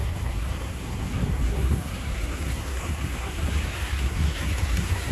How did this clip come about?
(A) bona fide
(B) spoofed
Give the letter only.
B